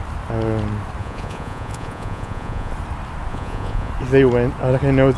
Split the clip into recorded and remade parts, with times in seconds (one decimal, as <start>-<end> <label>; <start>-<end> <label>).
0.0-1.0 recorded; 1.0-2.7 remade; 2.7-3.3 recorded; 3.3-3.9 remade; 3.9-5.2 recorded